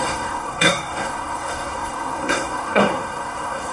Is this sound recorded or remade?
remade